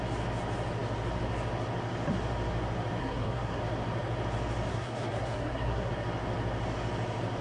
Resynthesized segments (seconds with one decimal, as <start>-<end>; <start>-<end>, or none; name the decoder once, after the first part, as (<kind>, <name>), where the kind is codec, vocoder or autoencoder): 3.0-3.6 (codec, SNAC); 4.7-5.9